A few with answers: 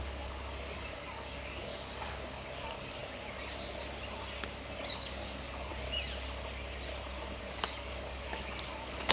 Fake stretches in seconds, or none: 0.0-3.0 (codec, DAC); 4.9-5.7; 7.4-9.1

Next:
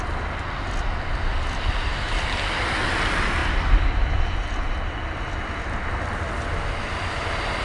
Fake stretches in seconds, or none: none

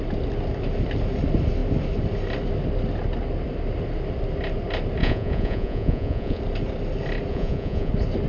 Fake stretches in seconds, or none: 5.0-6.4 (vocoder, Vocos); 7.3-7.9

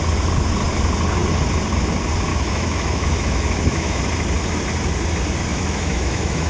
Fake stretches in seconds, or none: 2.3-4.0 (autoencoder, DAC-VAE); 5.5-6.5

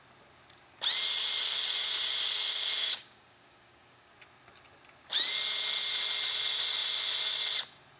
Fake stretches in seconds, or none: 2.8-4.1 (codec, DAC)

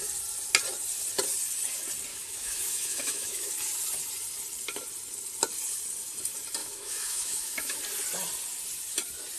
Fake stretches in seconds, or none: 2.1-3.5 (autoencoder, DAC-VAE); 6.6-7.8

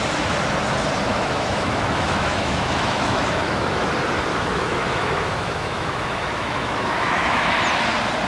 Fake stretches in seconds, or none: 1.1-3.9 (autoencoder, DAC-VAE); 4.3-7.5

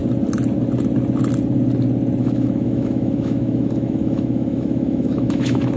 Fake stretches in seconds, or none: 2.2-5.8 (autoencoder, DAC-VAE)